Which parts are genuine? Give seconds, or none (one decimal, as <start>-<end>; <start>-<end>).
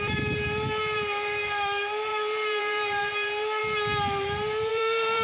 none